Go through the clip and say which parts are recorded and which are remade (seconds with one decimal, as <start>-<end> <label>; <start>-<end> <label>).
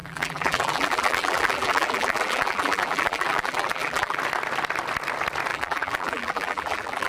0.0-4.2 remade; 4.2-5.5 recorded; 5.5-7.1 remade